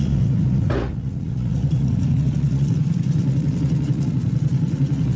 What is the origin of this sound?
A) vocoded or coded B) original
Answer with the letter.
A